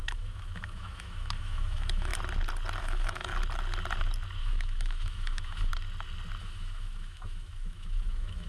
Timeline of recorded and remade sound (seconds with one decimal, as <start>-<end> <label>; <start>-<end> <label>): 0.0-2.1 remade; 2.1-2.8 recorded; 2.8-3.3 remade; 3.3-4.4 recorded; 4.4-5.7 remade; 5.7-6.4 recorded; 6.4-8.5 remade